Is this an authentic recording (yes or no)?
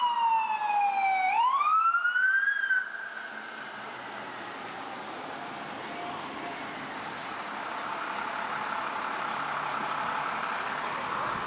yes